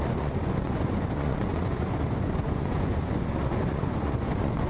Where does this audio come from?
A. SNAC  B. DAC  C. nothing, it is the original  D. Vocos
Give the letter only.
D